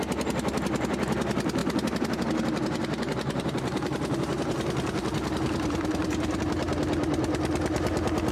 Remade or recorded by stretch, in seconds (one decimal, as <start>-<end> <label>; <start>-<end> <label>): 0.0-1.6 recorded; 1.6-6.4 remade; 6.4-8.3 recorded